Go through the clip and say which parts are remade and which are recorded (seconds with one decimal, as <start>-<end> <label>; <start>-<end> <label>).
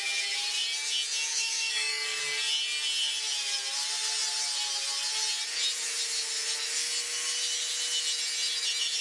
0.0-1.3 recorded; 1.3-2.2 remade; 2.2-9.0 recorded